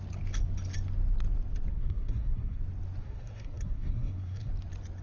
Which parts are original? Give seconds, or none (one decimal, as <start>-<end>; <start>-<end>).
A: 0.0-1.7; 2.6-3.0; 4.5-5.0